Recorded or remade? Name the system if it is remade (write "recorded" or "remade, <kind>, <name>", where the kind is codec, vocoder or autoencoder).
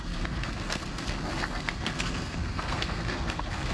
remade, codec, SNAC